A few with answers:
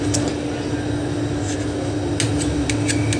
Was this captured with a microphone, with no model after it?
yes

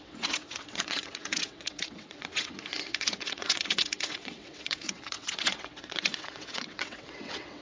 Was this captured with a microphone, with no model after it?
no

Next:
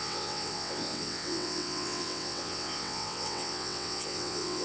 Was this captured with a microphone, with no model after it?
no